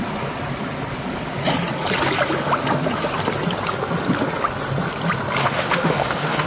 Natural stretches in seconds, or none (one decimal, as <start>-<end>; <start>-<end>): 0.0-5.4